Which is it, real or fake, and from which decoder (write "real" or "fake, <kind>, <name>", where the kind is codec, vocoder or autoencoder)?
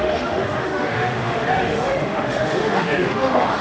fake, autoencoder, DAC-VAE